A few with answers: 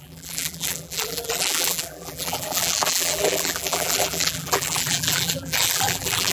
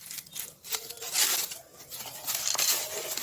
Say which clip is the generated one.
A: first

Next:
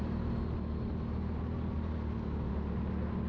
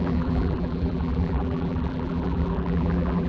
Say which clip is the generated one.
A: second